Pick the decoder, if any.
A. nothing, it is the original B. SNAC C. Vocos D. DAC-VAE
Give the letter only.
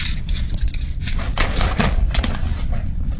C